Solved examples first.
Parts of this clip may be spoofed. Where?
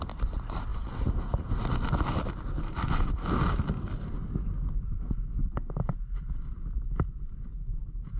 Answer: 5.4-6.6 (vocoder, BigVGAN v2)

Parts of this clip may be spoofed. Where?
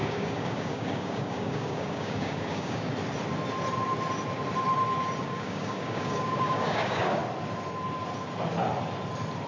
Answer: 0.0-2.9 (codec, DAC); 5.2-7.2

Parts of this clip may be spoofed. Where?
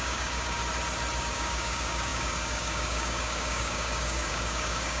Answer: 0.0-0.6 (codec, DAC); 1.2-5.0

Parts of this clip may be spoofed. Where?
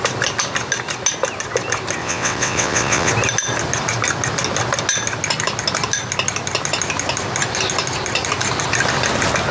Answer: 2.0-3.1 (vocoder, WaveNeXt)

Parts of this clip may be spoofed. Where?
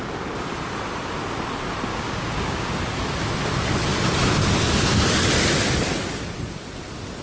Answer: 1.9-2.7 (codec, DAC)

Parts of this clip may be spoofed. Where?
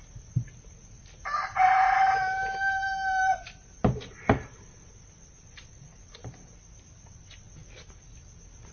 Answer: none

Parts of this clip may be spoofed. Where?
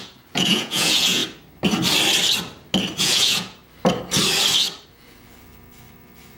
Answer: 0.0-1.2 (vocoder, Vocos); 3.0-3.6; 4.9-6.4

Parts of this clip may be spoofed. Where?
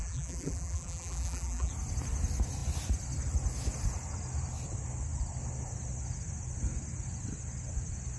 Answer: 0.0-1.7 (vocoder, BigVGAN v2)